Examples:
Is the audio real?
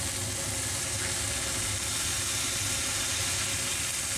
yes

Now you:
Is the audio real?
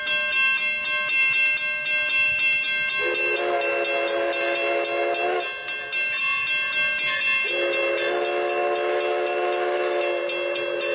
yes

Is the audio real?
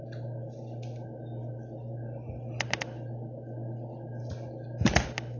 yes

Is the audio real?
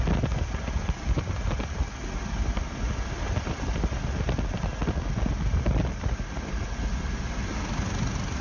yes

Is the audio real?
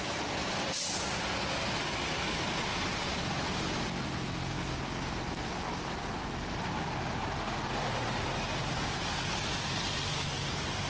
yes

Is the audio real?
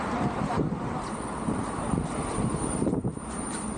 no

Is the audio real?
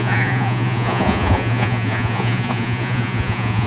no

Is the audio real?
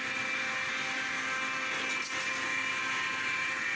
yes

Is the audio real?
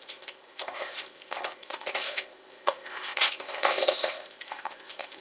no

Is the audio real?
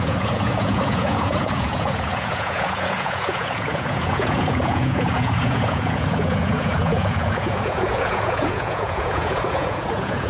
no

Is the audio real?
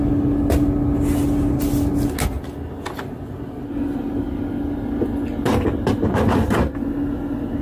yes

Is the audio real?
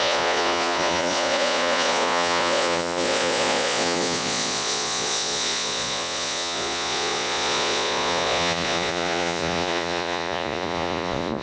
no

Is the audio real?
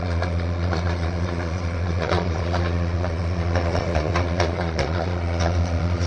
no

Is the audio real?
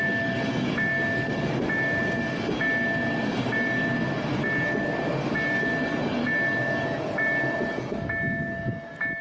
yes